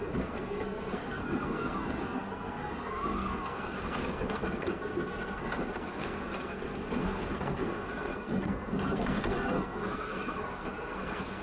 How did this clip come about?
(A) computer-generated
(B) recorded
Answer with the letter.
A